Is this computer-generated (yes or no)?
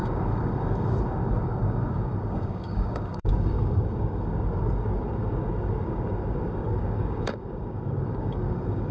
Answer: yes